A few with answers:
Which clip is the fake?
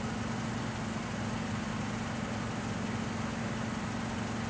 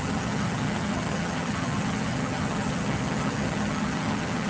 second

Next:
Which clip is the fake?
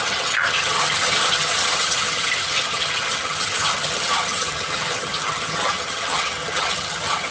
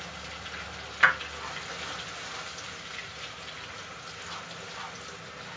first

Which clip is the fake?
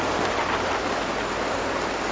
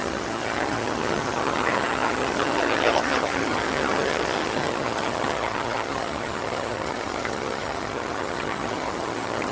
second